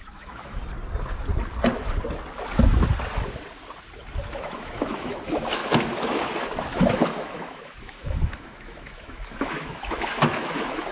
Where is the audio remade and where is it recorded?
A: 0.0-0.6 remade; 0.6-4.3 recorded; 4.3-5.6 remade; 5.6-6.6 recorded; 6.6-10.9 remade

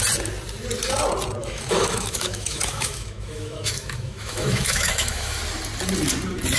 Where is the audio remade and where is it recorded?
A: 0.0-1.4 recorded; 1.4-5.4 remade; 5.4-6.6 recorded

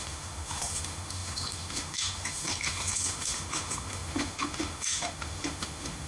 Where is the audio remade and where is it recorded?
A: 0.0-6.1 remade

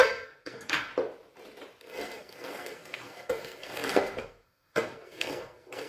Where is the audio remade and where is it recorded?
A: 0.0-0.9 remade; 0.9-1.8 recorded; 1.8-5.9 remade

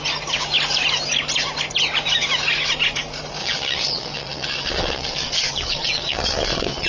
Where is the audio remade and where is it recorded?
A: 0.0-3.4 recorded; 3.4-6.9 remade

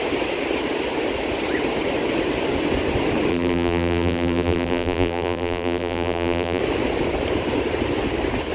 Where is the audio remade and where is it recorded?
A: 0.0-3.3 recorded; 3.3-6.6 remade; 6.6-8.5 recorded

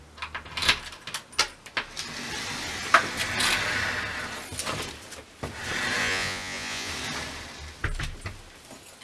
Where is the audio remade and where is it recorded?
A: 0.0-6.0 recorded; 6.0-6.9 remade; 6.9-9.0 recorded

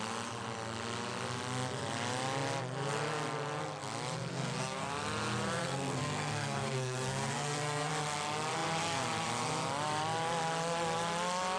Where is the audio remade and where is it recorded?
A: 0.0-4.3 recorded; 4.3-4.9 remade; 4.9-5.6 recorded; 5.6-7.9 remade; 7.9-11.6 recorded